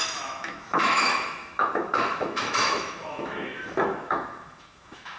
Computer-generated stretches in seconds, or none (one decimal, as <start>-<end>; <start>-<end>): 0.0-5.2